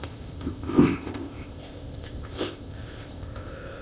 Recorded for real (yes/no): no